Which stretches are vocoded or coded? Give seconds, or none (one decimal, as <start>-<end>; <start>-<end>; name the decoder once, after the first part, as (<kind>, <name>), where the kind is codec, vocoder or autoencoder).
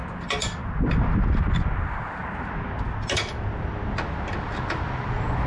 none